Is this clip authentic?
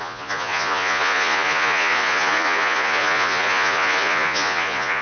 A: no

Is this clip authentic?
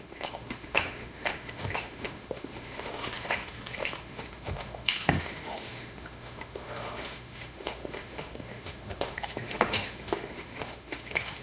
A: no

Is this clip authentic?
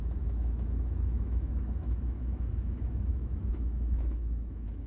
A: no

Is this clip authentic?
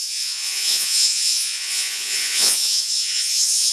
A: no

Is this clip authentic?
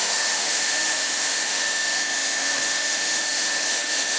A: no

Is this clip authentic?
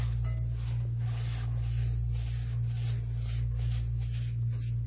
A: yes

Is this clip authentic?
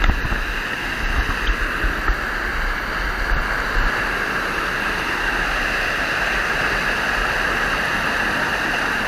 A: yes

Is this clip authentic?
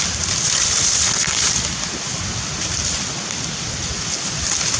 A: yes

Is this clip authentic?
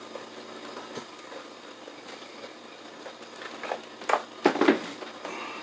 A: yes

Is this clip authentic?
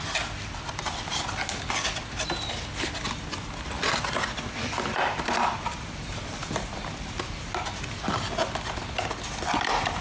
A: yes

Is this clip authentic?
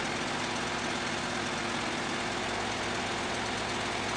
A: yes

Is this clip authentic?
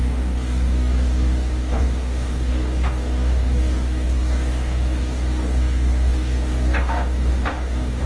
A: no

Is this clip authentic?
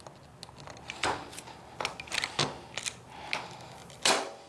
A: yes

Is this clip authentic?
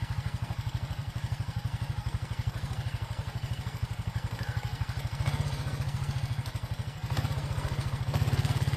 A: no